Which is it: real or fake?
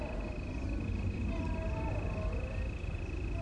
real